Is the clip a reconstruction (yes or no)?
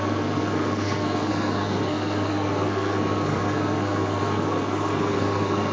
yes